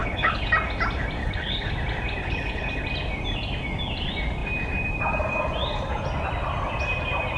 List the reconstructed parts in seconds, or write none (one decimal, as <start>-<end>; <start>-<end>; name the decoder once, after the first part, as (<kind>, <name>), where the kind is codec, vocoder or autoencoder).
0.0-0.5 (codec, HILCodec); 1.2-1.7; 2.2-2.8